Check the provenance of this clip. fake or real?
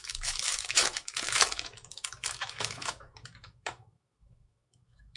fake